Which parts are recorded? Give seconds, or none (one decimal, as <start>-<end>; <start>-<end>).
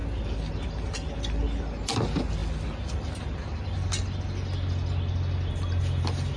0.0-6.4